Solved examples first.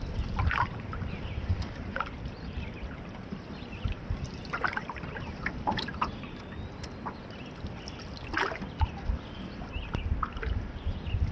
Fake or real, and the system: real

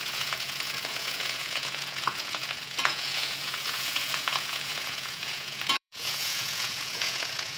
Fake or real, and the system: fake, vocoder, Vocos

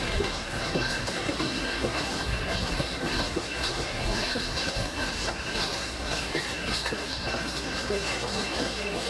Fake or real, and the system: fake, codec, SNAC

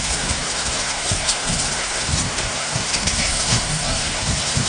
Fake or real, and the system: fake, codec, SNAC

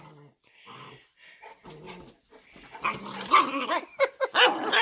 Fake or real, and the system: real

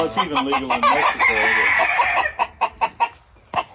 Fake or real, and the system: real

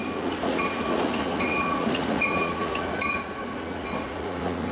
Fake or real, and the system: fake, vocoder, Vocos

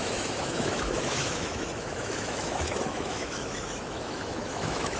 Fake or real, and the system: fake, autoencoder, DAC-VAE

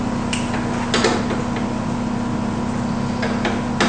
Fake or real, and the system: real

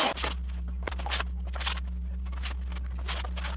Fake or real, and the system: real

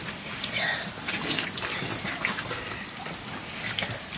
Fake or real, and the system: real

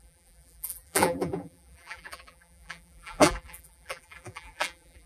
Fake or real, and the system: fake, vocoder, BigVGAN v2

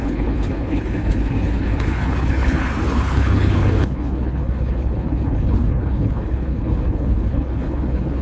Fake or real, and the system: fake, codec, HILCodec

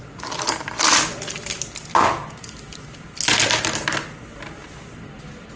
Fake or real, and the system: real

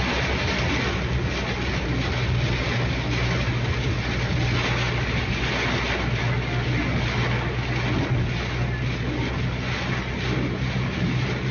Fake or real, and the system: real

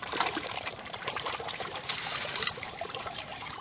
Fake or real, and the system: fake, vocoder, BigVGAN v2